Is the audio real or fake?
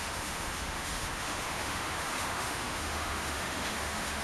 fake